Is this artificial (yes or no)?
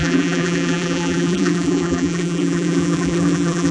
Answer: yes